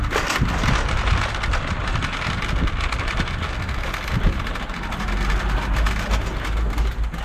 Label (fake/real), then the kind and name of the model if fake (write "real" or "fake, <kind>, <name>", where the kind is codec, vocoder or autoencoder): real